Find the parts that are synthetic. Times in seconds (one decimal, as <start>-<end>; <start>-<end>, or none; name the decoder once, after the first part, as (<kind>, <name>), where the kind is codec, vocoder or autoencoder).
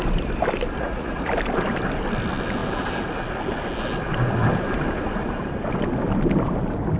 0.8-1.3 (vocoder, Vocos)